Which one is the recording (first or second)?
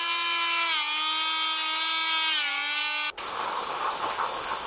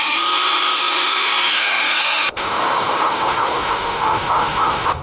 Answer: first